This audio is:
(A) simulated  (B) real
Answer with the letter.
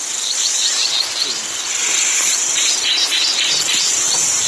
B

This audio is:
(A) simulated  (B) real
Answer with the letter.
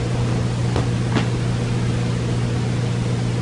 B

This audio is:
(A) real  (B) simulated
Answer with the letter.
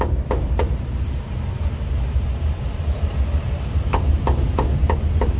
A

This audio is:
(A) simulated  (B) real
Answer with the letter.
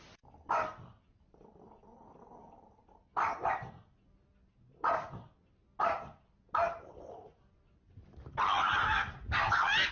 B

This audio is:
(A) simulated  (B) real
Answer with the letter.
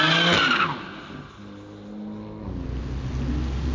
B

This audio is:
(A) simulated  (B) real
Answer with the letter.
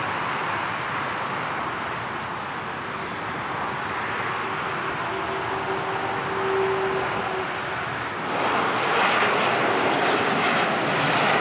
B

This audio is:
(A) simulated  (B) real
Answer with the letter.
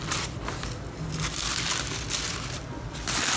B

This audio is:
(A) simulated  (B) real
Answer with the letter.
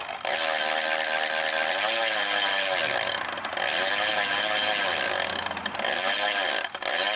B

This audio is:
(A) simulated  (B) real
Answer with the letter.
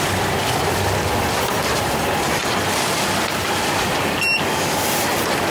B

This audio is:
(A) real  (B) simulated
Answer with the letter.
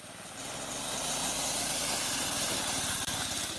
A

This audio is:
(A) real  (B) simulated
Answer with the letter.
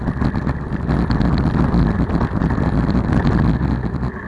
A